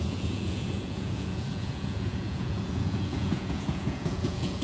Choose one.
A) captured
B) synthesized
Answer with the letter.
B